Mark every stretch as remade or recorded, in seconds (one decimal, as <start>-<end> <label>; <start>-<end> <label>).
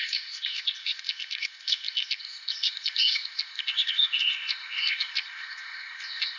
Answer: 0.0-6.4 remade